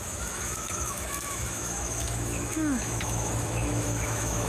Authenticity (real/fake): fake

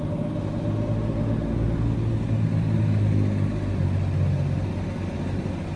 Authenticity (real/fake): real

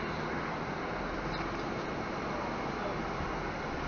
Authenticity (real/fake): real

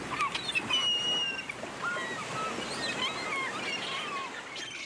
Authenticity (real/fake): real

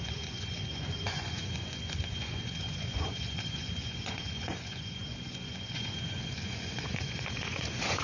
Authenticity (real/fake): fake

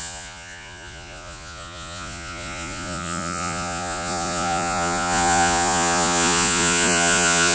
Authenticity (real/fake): fake